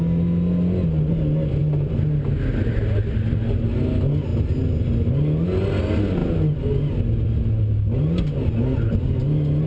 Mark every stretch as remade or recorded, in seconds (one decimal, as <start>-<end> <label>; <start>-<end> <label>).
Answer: 0.0-9.7 recorded